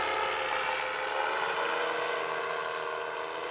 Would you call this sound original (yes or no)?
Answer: yes